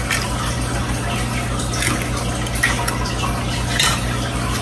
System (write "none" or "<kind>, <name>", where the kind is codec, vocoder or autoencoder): none